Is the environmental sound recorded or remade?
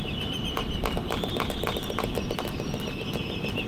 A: remade